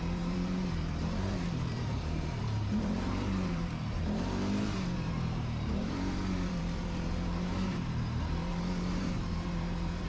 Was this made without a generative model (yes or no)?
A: no